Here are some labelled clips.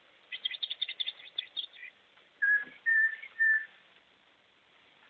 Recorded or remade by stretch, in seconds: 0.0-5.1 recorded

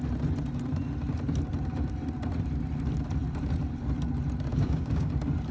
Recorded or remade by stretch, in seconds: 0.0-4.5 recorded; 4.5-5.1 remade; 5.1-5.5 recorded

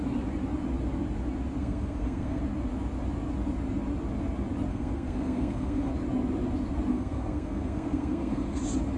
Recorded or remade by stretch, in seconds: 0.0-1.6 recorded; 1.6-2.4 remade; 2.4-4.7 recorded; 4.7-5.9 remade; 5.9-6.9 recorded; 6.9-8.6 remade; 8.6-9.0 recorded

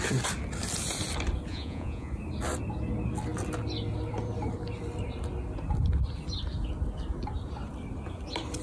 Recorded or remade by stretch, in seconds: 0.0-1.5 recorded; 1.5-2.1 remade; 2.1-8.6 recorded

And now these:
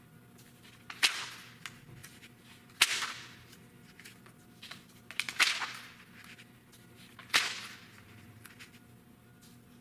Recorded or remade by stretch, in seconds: 0.0-9.8 recorded